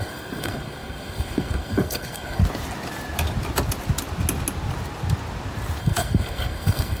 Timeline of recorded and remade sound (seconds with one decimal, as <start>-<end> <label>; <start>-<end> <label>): 0.0-2.4 remade; 2.4-5.8 recorded; 5.8-7.0 remade